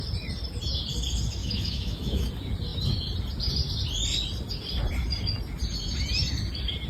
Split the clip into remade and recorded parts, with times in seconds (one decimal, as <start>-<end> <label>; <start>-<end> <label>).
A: 0.0-1.4 recorded; 1.4-2.3 remade; 2.3-6.9 recorded